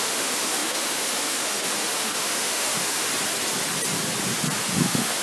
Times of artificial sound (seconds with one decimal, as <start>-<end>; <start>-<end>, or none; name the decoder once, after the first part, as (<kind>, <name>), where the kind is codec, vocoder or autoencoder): 0.0-3.1 (autoencoder, DAC-VAE); 4.7-5.2